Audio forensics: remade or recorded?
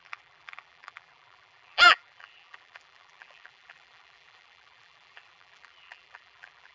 remade